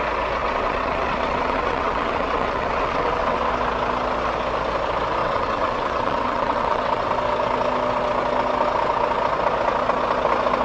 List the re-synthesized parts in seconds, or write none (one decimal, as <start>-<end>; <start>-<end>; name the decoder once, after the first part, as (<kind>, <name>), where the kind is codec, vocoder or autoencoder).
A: 0.4-3.5 (vocoder, WaveNeXt); 5.2-7.1